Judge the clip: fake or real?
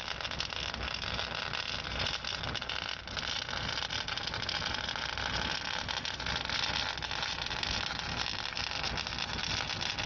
real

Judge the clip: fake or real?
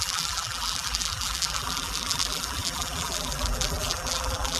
fake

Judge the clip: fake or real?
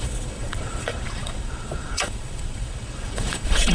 fake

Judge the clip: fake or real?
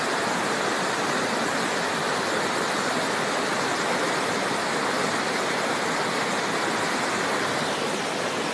real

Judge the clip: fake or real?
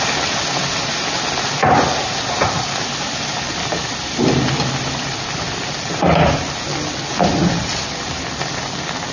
real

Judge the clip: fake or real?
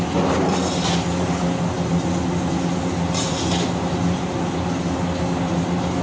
real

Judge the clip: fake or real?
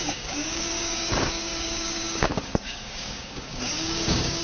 fake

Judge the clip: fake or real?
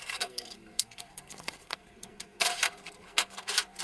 fake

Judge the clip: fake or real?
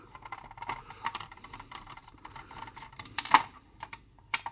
fake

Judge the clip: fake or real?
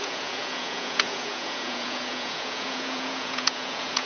fake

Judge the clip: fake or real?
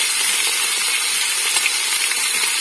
real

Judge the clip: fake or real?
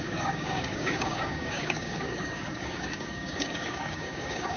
fake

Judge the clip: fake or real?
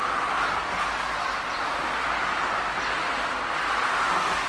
real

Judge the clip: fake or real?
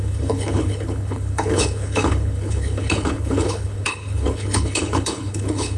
fake